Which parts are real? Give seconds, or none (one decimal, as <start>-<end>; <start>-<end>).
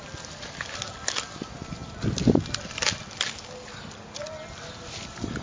0.0-5.4